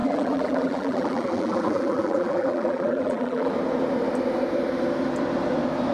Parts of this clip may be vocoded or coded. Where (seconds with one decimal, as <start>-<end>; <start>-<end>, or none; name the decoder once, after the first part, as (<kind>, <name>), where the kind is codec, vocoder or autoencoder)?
0.0-3.5 (vocoder, BigVGAN v2)

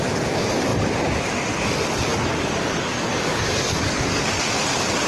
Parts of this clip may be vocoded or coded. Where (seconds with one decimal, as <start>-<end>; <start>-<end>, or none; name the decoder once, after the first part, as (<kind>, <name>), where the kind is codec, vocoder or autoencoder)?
2.1-4.4 (codec, DAC)

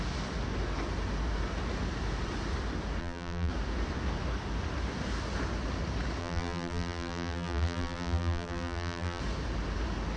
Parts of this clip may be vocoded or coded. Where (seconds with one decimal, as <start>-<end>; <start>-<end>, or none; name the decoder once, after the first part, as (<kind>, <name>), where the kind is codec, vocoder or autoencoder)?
3.0-3.5 (vocoder, BigVGAN v2); 6.2-9.2

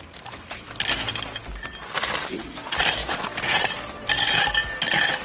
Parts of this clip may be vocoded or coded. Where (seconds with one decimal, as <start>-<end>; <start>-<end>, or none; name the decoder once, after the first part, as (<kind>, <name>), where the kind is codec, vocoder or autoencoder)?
3.0-3.6 (vocoder, Vocos)